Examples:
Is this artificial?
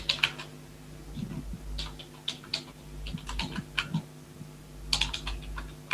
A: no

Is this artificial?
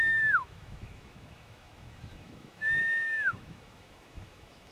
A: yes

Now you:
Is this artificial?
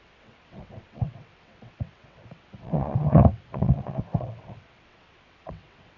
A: yes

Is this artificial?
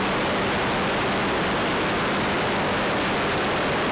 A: no